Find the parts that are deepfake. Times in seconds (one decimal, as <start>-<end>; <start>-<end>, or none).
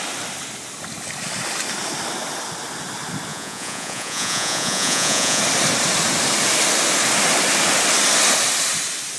3.3-5.4